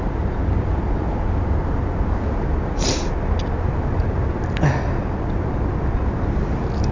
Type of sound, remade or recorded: recorded